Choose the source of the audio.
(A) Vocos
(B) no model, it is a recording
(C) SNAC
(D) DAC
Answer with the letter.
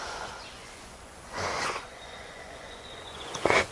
A